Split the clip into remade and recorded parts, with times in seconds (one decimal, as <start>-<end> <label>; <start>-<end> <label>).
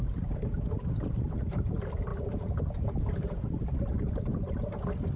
0.0-5.2 recorded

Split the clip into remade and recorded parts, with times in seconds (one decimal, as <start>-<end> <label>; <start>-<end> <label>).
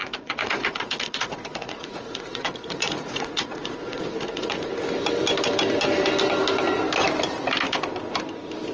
0.0-4.7 remade; 4.7-8.7 recorded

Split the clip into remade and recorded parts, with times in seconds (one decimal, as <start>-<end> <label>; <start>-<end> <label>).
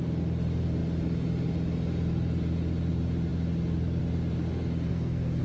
0.0-4.9 recorded; 4.9-5.4 remade